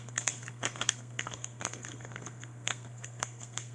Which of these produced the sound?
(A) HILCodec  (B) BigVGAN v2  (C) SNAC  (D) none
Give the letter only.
C